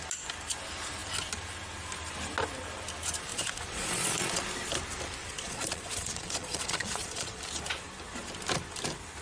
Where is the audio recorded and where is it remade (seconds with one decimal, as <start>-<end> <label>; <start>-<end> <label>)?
0.0-3.3 recorded; 3.3-4.4 remade; 4.4-5.2 recorded; 5.2-7.4 remade; 7.4-9.2 recorded